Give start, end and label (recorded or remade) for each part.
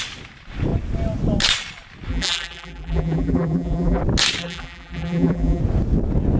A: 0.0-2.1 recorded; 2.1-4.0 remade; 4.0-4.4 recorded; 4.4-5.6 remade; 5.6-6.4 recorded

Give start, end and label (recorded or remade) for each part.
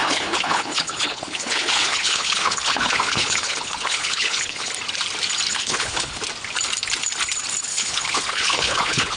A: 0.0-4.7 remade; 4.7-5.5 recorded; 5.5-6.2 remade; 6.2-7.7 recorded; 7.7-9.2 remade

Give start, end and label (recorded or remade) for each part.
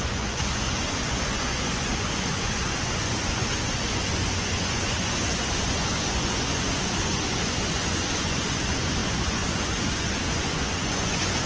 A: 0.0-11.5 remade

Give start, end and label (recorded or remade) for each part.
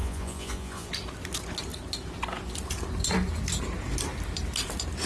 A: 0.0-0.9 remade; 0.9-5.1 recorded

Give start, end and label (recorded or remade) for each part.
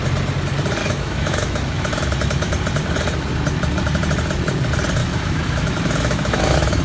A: 0.0-0.8 recorded; 0.8-2.5 remade; 2.5-5.0 recorded; 5.0-6.8 remade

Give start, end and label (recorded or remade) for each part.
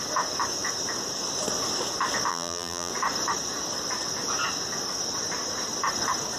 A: 0.0-2.3 recorded; 2.3-2.9 remade; 2.9-6.4 recorded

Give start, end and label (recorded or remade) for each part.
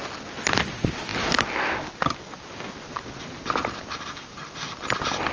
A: 0.0-5.3 recorded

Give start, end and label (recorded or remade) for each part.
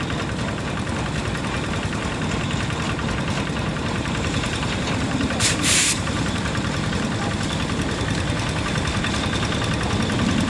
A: 0.0-3.7 recorded; 3.7-6.9 remade; 6.9-10.5 recorded